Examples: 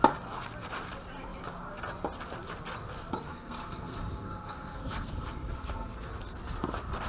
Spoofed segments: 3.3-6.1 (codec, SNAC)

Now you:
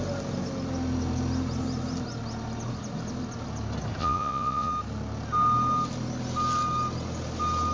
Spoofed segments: 4.0-4.7 (vocoder, Vocos)

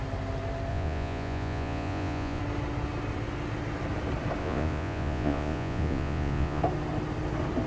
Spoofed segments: 0.7-2.4 (vocoder, Vocos); 4.4-6.6

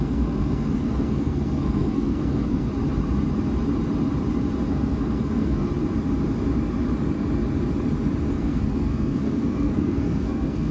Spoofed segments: 0.0-2.7 (codec, SNAC); 4.7-5.7; 8.3-10.7

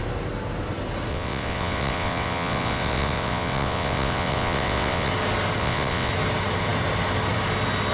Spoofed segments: 1.1-5.1 (vocoder, WaveNeXt); 5.6-6.1

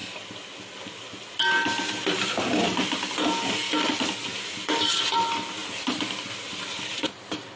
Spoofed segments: none